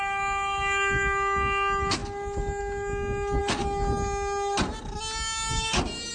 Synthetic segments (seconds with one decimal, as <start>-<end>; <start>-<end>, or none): none